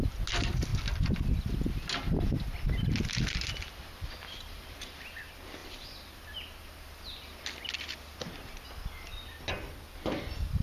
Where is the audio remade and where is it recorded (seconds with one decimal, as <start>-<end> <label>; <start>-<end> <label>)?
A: 0.0-10.6 recorded